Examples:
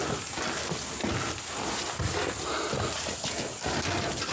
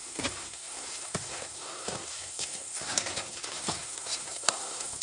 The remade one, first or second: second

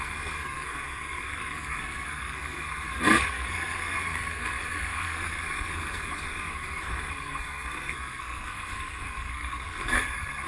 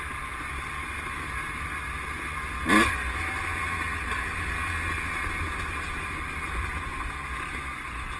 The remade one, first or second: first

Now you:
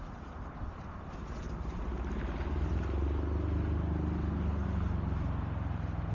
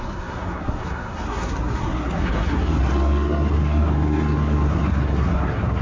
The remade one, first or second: second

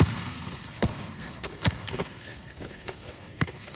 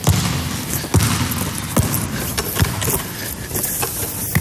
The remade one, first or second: first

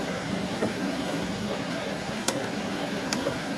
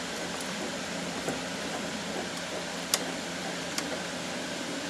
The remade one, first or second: first